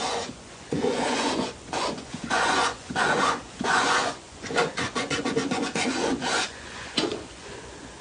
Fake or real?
fake